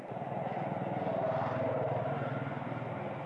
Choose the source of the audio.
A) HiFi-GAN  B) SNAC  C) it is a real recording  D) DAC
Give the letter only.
C